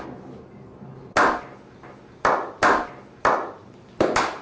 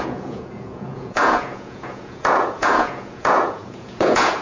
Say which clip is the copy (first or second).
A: second